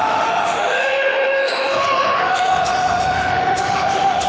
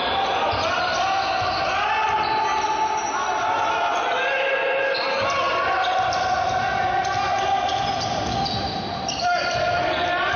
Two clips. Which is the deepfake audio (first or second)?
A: first